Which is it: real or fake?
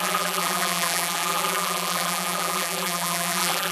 fake